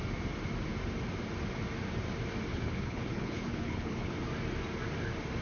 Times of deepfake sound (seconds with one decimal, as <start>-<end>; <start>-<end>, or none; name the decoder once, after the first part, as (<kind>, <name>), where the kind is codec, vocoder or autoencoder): 2.5-4.1 (codec, HILCodec)